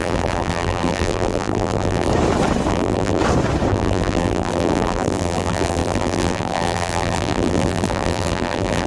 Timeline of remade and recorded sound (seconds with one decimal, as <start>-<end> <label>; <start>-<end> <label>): 0.0-2.1 remade; 2.1-2.7 recorded; 2.7-3.2 remade; 3.2-3.7 recorded; 3.7-8.9 remade